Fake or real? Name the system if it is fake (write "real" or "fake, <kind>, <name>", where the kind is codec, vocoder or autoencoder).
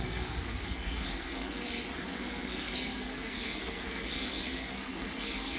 fake, codec, SNAC